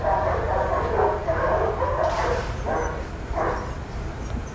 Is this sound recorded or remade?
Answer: recorded